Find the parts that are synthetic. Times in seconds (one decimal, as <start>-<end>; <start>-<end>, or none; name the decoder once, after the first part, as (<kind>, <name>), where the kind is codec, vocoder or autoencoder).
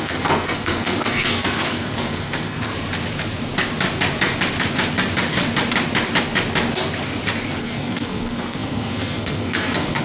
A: 0.0-2.7 (codec, SNAC); 7.6-10.0